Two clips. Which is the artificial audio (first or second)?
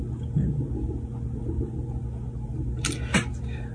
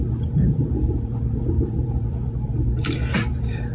second